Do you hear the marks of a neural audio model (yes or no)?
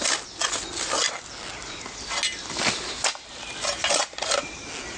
no